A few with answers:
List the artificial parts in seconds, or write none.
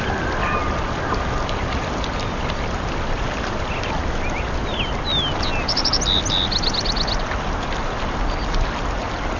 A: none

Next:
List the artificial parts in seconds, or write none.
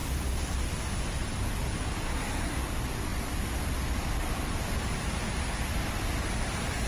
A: 0.0-2.1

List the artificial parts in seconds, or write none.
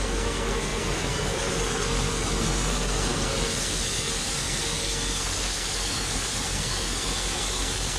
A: 0.0-8.0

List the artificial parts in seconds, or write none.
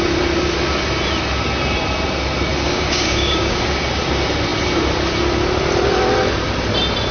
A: 2.7-3.6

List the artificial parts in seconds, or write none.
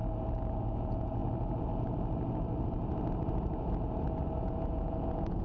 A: 0.6-1.2; 4.4-5.4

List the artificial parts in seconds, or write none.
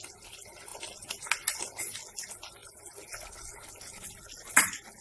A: none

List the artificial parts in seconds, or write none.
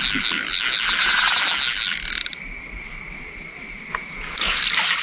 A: 3.9-4.6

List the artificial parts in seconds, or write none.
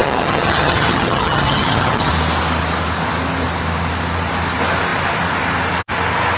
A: 0.0-2.1